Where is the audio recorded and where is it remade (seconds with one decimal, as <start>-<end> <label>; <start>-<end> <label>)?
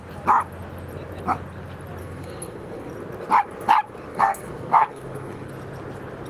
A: 0.0-2.0 recorded; 2.0-2.9 remade; 2.9-4.1 recorded; 4.1-5.5 remade; 5.5-6.3 recorded